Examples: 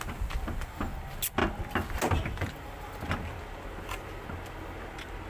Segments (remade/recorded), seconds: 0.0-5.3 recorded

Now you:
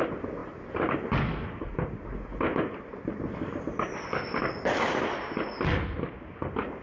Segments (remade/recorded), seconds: 0.0-6.8 recorded

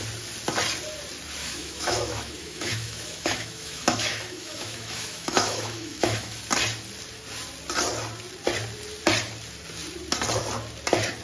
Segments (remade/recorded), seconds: 0.0-1.4 recorded; 1.4-6.4 remade; 6.4-11.2 recorded

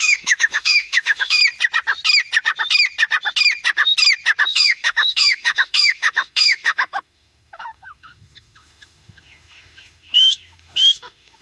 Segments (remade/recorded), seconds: 0.0-1.4 remade; 1.4-4.5 recorded; 4.5-11.4 remade

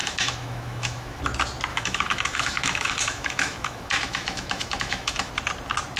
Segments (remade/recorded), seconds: 0.0-1.2 remade; 1.2-1.7 recorded; 1.7-5.3 remade; 5.3-6.0 recorded

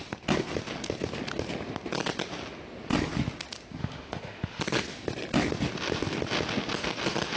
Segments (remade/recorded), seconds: 0.0-3.8 recorded; 3.8-4.6 remade; 4.6-7.4 recorded

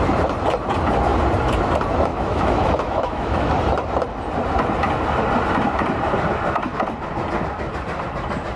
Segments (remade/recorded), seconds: 0.0-2.1 recorded; 2.1-3.5 remade; 3.5-8.6 recorded